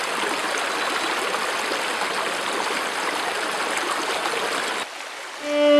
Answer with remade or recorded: recorded